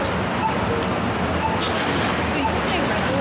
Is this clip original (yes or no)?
yes